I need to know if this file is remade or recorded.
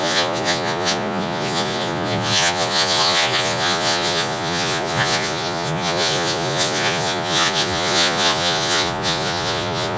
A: remade